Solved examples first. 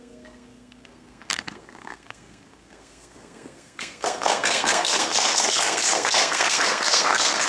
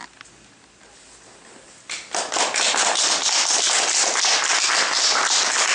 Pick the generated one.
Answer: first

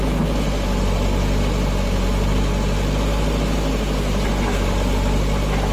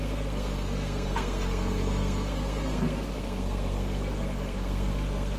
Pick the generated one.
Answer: second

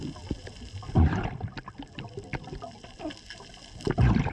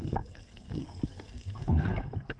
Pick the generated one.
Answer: second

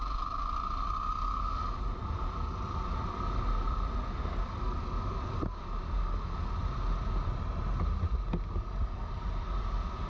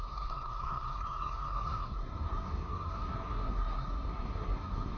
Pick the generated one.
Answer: second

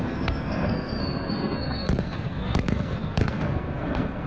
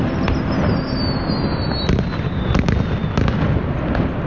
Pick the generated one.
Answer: first